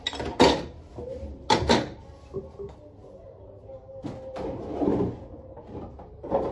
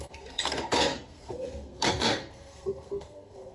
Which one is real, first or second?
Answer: first